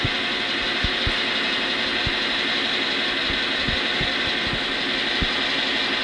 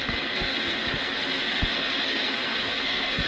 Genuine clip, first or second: first